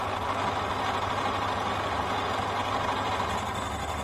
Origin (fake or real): real